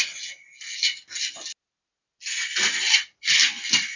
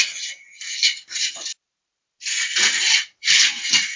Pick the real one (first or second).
first